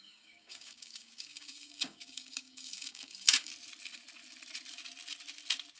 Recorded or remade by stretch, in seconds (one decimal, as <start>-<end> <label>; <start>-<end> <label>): 0.0-3.5 remade; 3.5-5.8 recorded